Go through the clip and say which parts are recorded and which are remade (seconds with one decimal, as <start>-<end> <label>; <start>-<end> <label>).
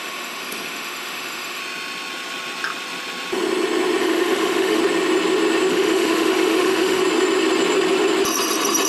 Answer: 0.0-1.6 remade; 1.6-4.0 recorded; 4.0-4.8 remade; 4.8-5.7 recorded; 5.7-7.0 remade; 7.0-8.9 recorded